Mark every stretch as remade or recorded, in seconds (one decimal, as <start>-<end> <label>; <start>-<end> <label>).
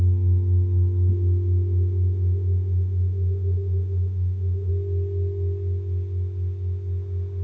0.0-1.1 recorded; 1.1-4.7 remade; 4.7-7.4 recorded